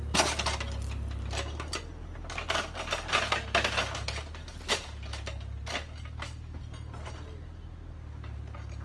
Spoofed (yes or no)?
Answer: no